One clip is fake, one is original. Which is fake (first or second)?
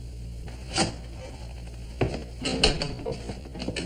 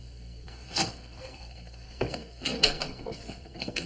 second